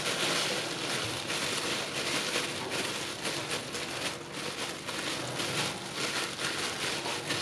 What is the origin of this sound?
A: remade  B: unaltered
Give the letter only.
B